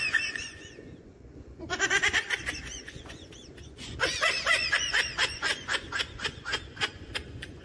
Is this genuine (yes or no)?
no